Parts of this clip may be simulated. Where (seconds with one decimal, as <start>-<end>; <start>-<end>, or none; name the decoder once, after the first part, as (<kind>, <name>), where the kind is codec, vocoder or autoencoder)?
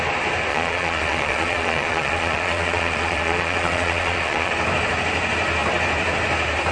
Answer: 0.5-4.5 (vocoder, Vocos)